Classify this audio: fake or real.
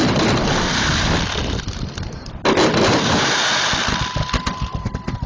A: real